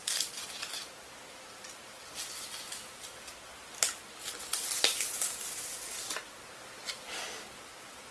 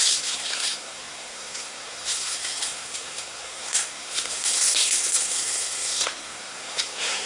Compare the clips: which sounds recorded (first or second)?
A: first